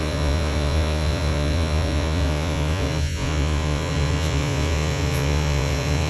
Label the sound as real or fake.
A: fake